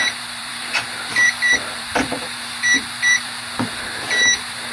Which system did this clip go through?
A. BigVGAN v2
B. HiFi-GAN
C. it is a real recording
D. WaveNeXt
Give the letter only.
A